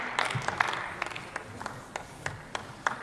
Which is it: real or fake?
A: real